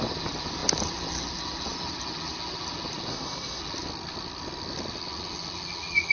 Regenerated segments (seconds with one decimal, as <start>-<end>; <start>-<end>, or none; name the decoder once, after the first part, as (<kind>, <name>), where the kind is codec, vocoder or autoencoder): 3.1-3.6 (codec, SNAC)